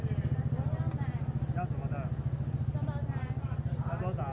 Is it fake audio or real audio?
real